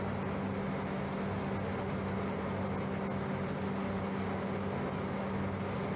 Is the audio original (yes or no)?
yes